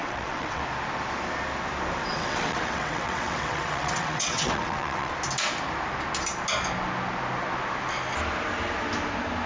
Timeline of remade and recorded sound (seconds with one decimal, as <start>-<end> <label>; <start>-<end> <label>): 0.0-0.6 remade; 0.6-2.1 recorded; 2.1-5.1 remade; 5.1-9.5 recorded